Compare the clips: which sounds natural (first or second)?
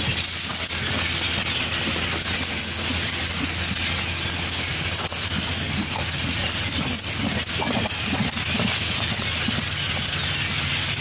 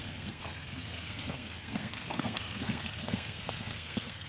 first